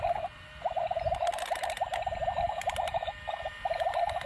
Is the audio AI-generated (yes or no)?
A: no